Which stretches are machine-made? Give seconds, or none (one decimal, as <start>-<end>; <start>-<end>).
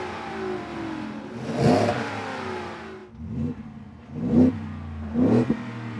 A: none